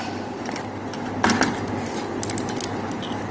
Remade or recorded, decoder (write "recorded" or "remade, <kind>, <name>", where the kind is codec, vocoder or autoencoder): recorded